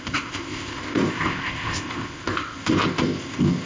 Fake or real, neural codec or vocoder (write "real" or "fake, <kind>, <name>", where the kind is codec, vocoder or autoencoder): fake, codec, ZipCodec